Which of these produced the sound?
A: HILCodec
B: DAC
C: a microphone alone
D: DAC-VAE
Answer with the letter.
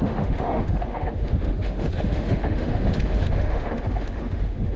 D